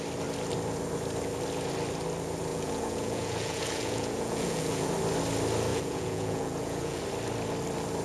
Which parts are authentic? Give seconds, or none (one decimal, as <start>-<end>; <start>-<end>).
0.0-2.5; 4.9-5.7; 7.0-8.0